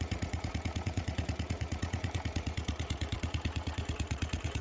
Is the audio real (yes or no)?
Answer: no